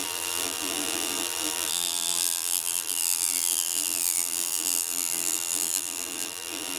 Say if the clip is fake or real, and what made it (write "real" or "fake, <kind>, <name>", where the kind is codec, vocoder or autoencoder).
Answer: fake, vocoder, BigVGAN v2